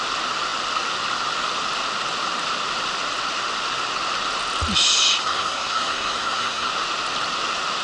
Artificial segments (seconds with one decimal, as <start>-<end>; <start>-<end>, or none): 5.2-6.7